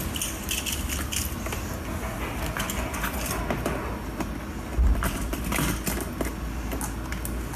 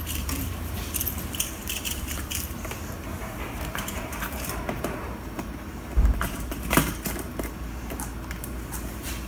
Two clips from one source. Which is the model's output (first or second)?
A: second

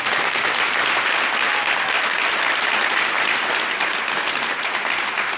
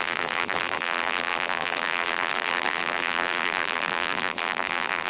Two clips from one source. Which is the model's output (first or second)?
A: second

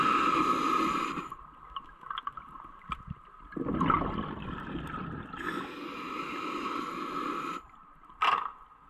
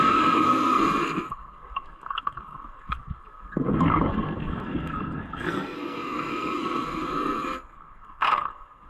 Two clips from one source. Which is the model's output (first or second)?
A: second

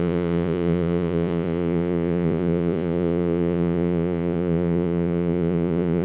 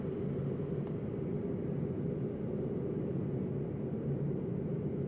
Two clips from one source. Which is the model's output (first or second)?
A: first